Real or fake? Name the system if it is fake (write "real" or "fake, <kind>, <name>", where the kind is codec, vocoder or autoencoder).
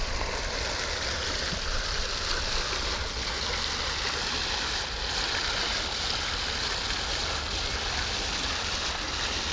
real